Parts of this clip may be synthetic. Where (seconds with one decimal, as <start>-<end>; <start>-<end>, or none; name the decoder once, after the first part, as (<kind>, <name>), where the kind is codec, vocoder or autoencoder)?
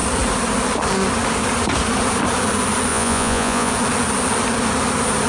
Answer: 2.9-3.7 (vocoder, Vocos)